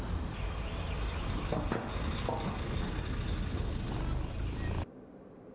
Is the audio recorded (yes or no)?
yes